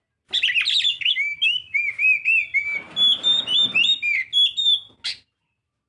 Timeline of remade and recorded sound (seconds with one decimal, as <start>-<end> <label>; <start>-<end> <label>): 0.0-0.9 recorded; 0.9-1.8 remade; 1.8-5.9 recorded